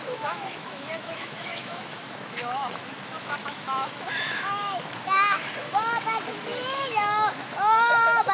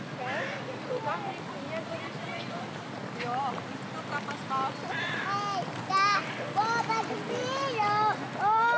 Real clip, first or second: second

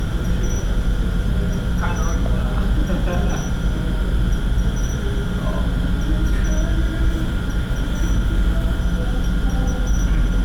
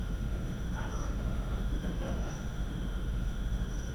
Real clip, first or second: first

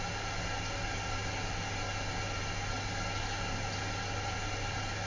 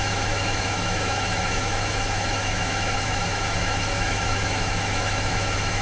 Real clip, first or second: first